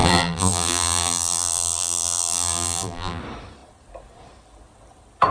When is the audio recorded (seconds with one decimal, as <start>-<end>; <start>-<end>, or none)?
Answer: 3.2-5.3